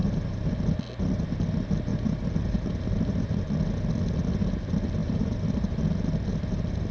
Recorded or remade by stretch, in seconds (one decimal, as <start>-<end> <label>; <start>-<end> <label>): 0.0-0.5 remade; 0.5-1.9 recorded; 1.9-3.3 remade; 3.3-5.0 recorded; 5.0-5.8 remade; 5.8-6.9 recorded